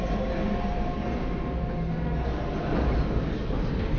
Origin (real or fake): real